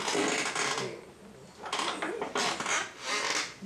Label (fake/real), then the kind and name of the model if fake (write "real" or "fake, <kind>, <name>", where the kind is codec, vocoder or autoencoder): real